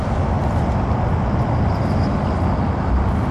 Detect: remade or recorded recorded